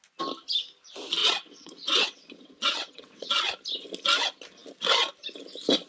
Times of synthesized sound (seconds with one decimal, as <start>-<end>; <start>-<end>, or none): 1.2-3.3